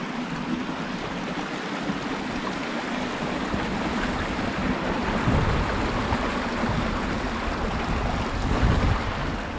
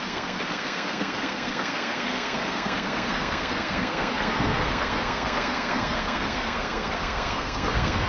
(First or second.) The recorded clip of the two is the first